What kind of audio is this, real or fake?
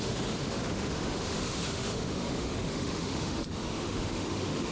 fake